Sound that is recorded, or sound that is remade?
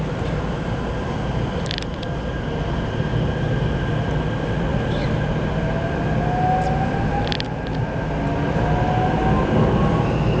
recorded